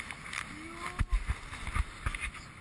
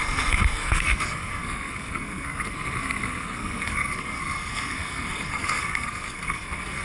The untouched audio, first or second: first